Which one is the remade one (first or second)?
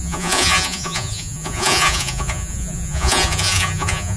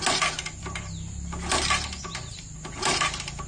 first